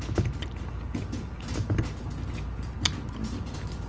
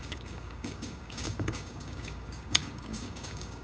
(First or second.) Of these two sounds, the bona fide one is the first